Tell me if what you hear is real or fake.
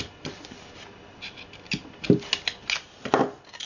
real